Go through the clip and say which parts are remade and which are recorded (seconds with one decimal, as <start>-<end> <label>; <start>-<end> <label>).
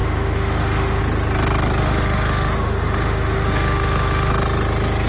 0.0-1.0 remade; 1.0-1.8 recorded; 1.8-4.3 remade; 4.3-5.1 recorded